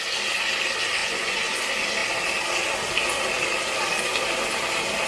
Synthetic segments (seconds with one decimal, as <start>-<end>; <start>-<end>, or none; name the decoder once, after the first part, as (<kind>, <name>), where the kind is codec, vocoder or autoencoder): 1.0-1.6 (vocoder, Vocos)